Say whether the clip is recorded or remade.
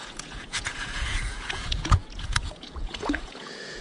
remade